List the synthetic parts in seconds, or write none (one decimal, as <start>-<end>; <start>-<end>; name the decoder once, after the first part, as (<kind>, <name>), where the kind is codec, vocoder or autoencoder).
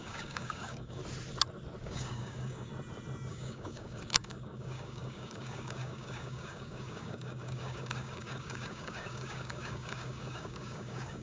0.0-1.0 (codec, DAC); 1.8-2.7; 3.3-11.2